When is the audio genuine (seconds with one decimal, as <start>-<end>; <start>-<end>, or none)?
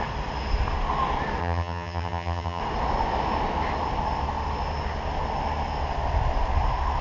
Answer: 0.0-1.4; 2.6-7.0